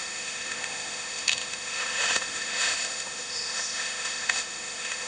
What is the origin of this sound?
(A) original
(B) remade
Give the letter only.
B